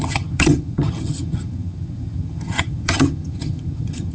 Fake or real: fake